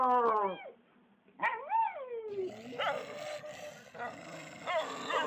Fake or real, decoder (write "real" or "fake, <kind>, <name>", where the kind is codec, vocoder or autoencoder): real